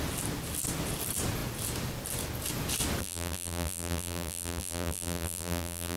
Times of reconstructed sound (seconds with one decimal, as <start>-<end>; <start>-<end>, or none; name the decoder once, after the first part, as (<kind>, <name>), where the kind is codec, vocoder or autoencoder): 3.0-6.0 (vocoder, BigVGAN v2)